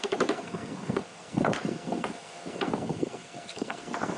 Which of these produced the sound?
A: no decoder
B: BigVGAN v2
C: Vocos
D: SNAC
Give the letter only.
D